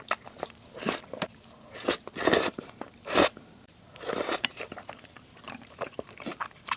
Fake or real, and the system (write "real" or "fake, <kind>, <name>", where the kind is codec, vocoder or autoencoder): fake, vocoder, BigVGAN v2